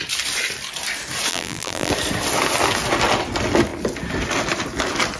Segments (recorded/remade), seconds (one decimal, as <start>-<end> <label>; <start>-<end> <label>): 0.0-1.3 recorded; 1.3-1.9 remade; 1.9-5.2 recorded